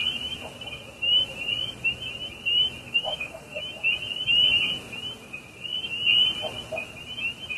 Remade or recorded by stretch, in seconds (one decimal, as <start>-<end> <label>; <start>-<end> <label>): 0.0-2.8 recorded; 2.8-3.6 remade; 3.6-7.6 recorded